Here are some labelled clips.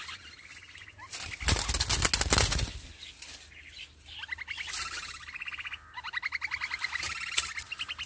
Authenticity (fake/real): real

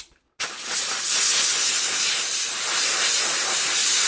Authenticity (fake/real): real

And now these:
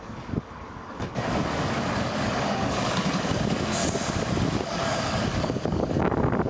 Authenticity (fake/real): fake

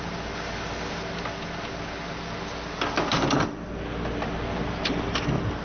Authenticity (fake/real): real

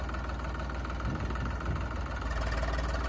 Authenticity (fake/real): real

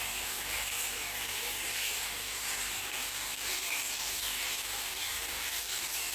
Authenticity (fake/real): fake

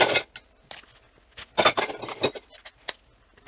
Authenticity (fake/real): real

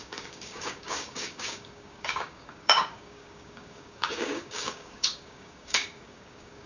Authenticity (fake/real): fake